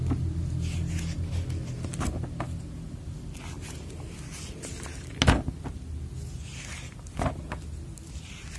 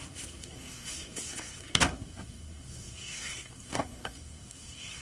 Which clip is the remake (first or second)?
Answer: second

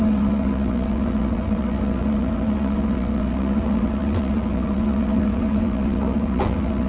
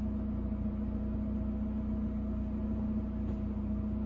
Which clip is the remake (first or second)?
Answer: first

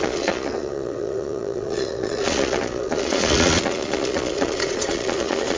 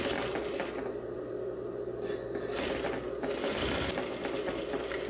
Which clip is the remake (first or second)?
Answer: first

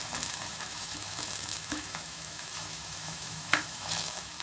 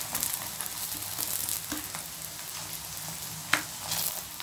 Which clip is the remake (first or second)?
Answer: first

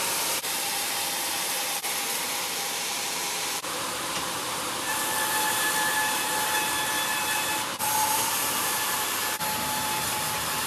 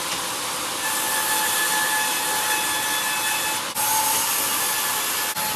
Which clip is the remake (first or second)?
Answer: first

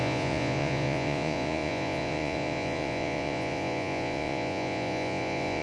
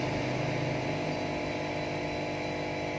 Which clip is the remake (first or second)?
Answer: first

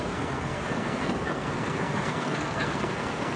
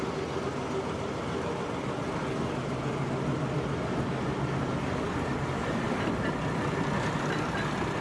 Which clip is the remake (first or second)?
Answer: first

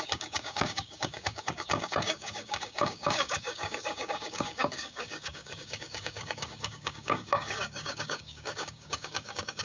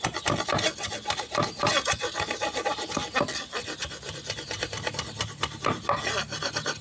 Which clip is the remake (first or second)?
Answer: first